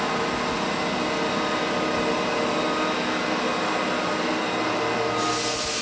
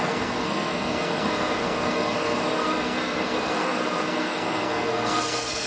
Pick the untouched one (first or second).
first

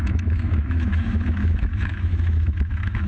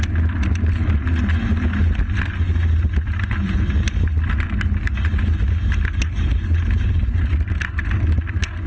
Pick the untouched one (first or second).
second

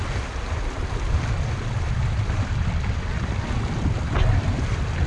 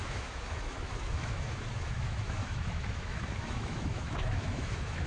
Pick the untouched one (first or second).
first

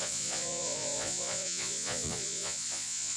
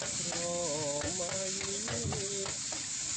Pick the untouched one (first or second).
second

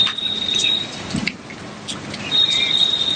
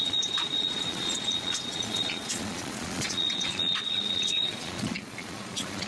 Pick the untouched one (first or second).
first